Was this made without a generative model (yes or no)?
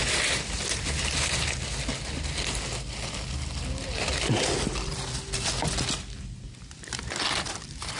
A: yes